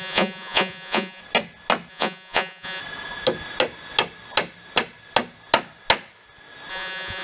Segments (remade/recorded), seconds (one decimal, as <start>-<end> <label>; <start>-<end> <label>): 0.0-1.2 remade; 1.2-1.9 recorded; 1.9-2.8 remade; 2.8-6.7 recorded; 6.7-7.2 remade